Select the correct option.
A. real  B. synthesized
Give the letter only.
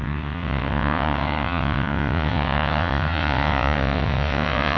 B